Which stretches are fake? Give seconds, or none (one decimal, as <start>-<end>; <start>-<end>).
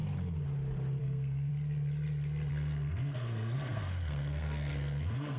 1.0-1.5; 2.5-5.4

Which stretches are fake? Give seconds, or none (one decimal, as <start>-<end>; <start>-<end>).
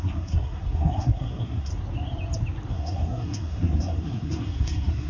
0.0-1.7; 2.7-5.1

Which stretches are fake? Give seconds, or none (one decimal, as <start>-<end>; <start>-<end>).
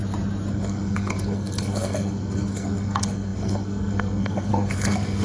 0.5-5.2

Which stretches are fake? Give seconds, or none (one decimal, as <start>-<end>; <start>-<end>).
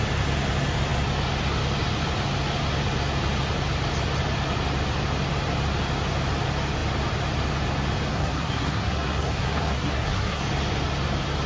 8.1-10.4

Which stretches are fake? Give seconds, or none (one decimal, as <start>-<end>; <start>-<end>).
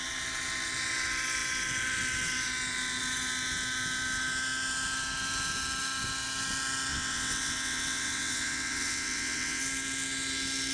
6.9-9.6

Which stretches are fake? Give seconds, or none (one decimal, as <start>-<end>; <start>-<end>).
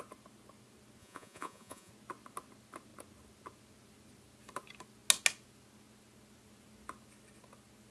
1.0-1.9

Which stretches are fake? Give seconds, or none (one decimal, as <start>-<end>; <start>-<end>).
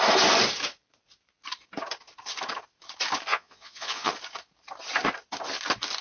3.3-4.1